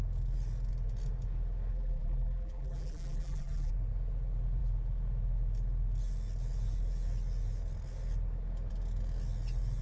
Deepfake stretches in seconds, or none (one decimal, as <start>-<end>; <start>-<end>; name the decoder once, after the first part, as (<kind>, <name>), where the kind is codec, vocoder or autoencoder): 1.7-3.7 (vocoder, BigVGAN v2)